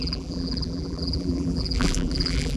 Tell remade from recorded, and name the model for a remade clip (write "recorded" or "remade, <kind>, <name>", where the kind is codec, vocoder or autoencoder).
remade, vocoder, BigVGAN v2